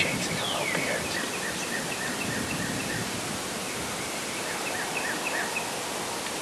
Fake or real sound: real